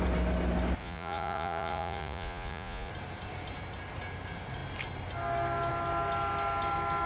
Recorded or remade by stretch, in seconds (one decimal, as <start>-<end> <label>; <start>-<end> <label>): 0.0-0.8 recorded; 0.8-2.9 remade; 2.9-7.1 recorded